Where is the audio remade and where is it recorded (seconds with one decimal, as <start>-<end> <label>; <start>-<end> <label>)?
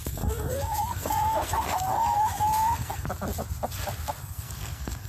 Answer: 0.0-3.1 remade; 3.1-4.2 recorded; 4.2-5.1 remade